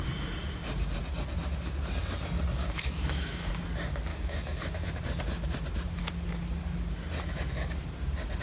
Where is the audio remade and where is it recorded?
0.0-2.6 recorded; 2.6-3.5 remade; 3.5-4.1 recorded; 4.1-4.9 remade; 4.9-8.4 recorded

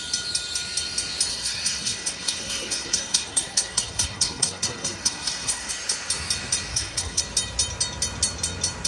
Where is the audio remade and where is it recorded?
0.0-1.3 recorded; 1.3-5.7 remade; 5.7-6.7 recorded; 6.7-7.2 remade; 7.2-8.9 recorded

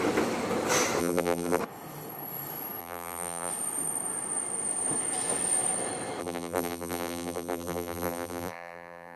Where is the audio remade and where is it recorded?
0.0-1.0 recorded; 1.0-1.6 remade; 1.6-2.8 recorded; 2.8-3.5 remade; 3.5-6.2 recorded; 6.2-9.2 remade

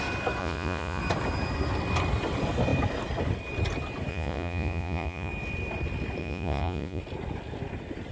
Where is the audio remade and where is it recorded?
0.0-0.4 recorded; 0.4-1.0 remade; 1.0-4.1 recorded; 4.1-5.3 remade; 5.3-6.2 recorded; 6.2-7.0 remade; 7.0-8.1 recorded

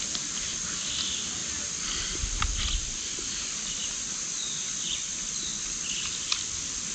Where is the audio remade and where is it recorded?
0.0-6.9 recorded